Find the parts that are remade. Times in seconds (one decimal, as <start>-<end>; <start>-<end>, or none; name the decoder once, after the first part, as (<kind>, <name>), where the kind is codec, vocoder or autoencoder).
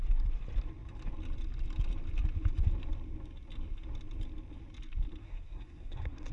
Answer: 5.2-6.3 (codec, SNAC)